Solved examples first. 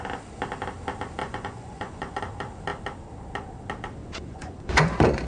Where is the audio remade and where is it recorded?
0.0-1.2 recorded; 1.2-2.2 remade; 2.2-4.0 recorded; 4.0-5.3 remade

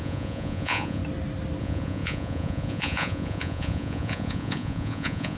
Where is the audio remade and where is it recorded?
0.0-1.0 remade; 1.0-1.6 recorded; 1.6-5.4 remade

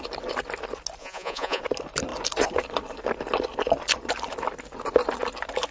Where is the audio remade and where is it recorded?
0.0-1.0 recorded; 1.0-1.6 remade; 1.6-5.7 recorded

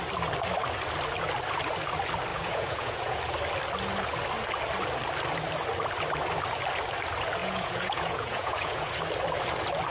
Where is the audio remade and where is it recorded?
0.0-2.3 recorded; 2.3-3.2 remade; 3.2-7.4 recorded; 7.4-8.9 remade; 8.9-9.9 recorded

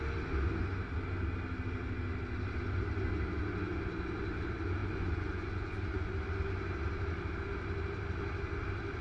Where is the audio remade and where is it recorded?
0.0-4.8 recorded; 4.8-6.1 remade; 6.1-9.0 recorded